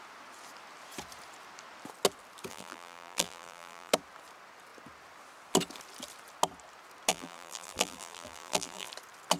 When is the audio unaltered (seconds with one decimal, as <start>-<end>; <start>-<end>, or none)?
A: 0.0-2.5; 3.9-7.1; 8.9-9.4